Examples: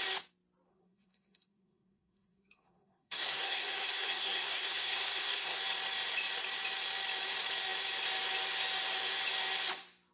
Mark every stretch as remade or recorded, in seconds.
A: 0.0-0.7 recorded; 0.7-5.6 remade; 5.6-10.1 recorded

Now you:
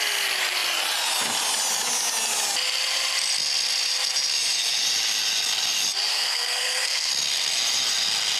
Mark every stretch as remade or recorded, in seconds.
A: 0.0-6.1 recorded; 6.1-7.1 remade; 7.1-8.4 recorded